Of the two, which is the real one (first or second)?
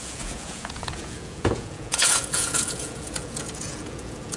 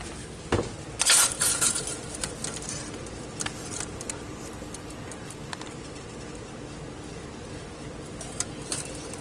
second